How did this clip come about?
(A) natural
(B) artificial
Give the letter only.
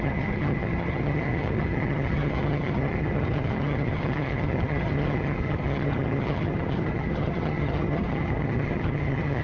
B